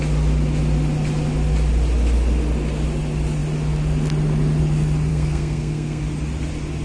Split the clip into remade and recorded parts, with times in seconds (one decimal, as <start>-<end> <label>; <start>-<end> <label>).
0.0-5.1 recorded; 5.1-6.0 remade; 6.0-6.8 recorded